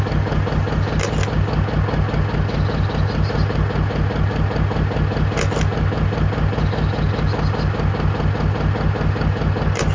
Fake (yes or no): no